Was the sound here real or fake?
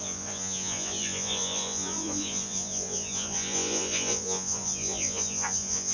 fake